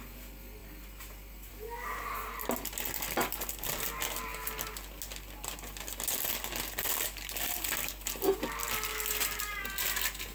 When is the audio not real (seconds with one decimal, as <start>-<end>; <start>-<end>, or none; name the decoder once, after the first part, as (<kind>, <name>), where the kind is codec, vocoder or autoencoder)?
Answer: none